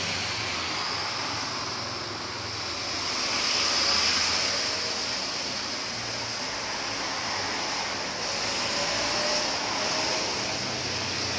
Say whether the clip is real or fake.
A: real